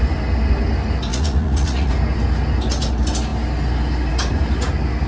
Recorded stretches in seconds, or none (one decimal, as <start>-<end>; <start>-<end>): 0.0-1.1; 1.9-5.1